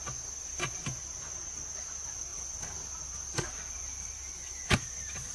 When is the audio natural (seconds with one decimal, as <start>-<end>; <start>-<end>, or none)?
0.0-5.3